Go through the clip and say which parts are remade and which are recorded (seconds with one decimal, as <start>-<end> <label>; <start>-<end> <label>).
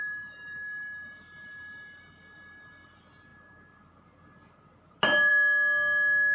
0.0-6.3 recorded